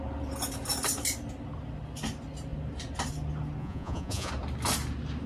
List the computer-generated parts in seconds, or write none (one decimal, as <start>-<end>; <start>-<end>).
3.6-4.3